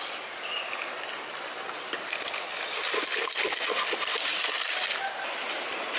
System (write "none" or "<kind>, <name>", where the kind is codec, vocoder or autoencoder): vocoder, BigVGAN v2